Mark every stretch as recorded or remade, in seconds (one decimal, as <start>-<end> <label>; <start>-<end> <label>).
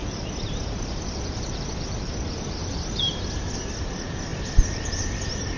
0.0-3.0 remade; 3.0-4.3 recorded; 4.3-5.0 remade; 5.0-5.6 recorded